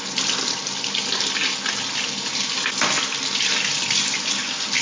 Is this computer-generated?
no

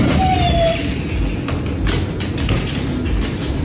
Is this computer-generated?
no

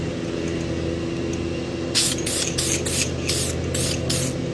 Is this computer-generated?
no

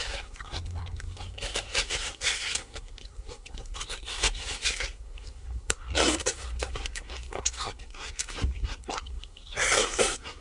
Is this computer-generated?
yes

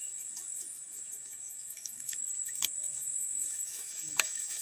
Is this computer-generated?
yes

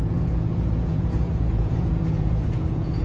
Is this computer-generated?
yes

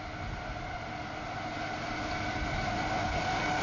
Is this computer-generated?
no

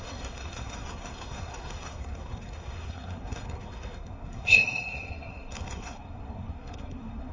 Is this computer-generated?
yes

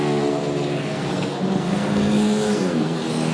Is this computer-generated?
yes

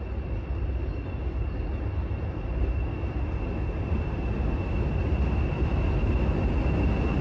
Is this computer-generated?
no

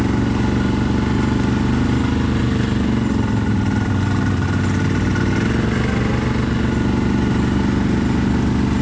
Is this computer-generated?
no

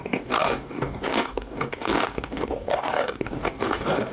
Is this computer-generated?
yes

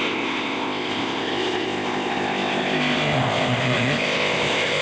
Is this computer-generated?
yes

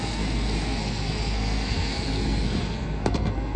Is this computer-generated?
yes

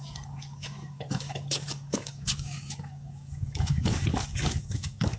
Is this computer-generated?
yes